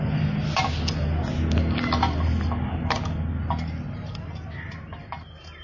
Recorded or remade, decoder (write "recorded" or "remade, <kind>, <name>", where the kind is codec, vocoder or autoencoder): recorded